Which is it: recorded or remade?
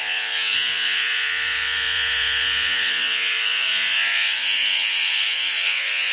remade